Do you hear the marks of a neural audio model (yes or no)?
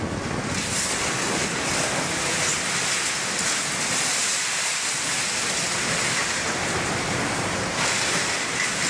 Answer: no